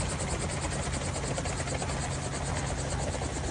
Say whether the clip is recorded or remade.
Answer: recorded